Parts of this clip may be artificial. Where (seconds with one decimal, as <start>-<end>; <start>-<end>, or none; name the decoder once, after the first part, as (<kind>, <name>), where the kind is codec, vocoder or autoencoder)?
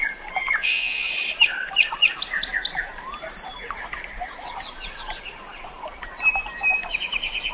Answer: 0.6-1.1 (vocoder, Vocos)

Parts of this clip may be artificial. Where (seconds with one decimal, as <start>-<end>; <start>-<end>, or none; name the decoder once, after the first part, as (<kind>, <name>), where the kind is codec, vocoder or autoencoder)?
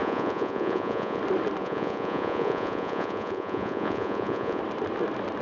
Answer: 0.0-1.2 (vocoder, Vocos); 1.6-4.6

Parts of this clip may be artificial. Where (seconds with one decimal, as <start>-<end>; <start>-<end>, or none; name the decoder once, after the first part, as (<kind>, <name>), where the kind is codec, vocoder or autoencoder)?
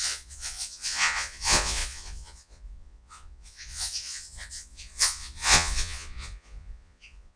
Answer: 0.0-7.4 (vocoder, Vocos)